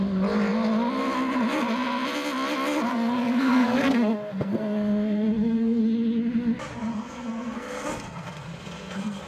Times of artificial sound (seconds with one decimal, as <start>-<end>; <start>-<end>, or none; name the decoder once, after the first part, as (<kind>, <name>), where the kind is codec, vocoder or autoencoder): 2.9-5.8 (codec, SNAC); 6.9-9.3